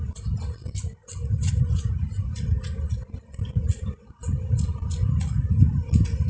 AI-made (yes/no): no